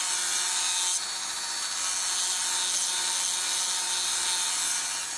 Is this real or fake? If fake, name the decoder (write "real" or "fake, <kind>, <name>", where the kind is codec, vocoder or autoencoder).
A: real